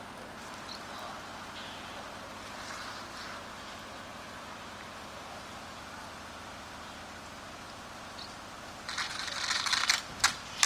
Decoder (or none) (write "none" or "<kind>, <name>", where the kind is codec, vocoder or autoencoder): none